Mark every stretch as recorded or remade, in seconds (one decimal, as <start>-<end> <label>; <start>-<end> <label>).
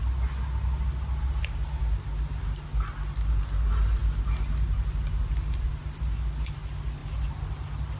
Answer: 0.0-8.0 recorded